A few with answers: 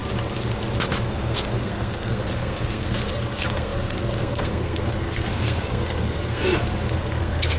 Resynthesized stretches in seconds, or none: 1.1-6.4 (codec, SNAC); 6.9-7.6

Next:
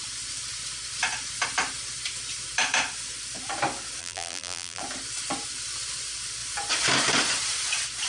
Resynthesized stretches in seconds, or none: 4.0-4.8 (vocoder, BigVGAN v2)

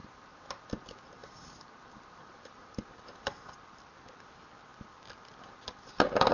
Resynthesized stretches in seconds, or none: 0.0-0.6 (vocoder, BigVGAN v2); 1.2-2.7

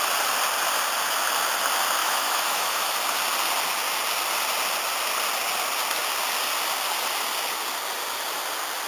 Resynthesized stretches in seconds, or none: 2.0-2.9 (autoencoder, DAC-VAE)

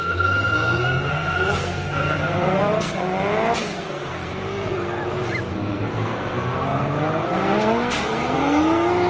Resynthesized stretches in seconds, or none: 0.0-3.0 (codec, SNAC); 3.6-5.0; 5.5-9.1